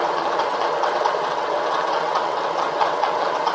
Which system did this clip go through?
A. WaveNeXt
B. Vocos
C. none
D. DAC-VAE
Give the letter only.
A